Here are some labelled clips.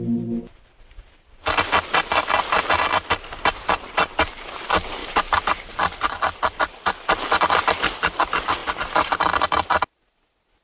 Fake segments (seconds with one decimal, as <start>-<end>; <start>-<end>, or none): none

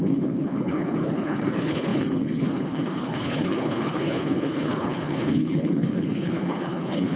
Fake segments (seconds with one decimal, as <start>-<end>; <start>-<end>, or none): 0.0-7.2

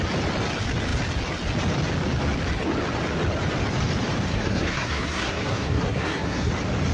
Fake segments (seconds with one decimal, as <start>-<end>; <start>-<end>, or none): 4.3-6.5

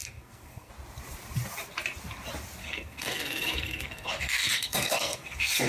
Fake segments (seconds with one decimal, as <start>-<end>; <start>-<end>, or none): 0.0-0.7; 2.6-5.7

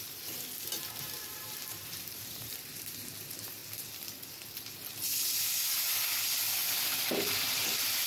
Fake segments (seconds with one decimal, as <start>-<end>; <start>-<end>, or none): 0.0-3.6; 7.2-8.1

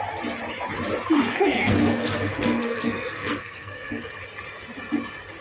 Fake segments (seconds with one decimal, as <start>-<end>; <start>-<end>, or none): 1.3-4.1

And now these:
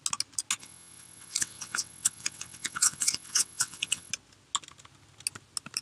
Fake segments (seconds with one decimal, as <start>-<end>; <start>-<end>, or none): 0.6-4.1